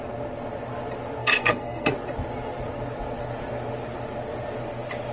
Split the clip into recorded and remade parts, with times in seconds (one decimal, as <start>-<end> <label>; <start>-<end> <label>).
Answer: 0.0-1.2 recorded; 1.2-1.9 remade; 1.9-5.1 recorded